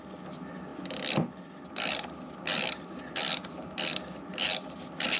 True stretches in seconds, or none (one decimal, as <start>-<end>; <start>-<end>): 0.0-5.2